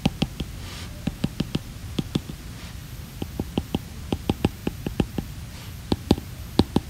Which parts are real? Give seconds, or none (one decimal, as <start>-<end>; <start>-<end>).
0.0-4.6; 5.8-6.9